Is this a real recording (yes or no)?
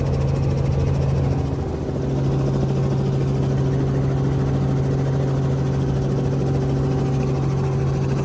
yes